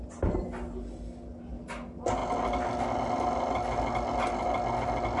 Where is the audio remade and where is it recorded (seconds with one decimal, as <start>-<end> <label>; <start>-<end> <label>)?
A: 0.0-5.2 recorded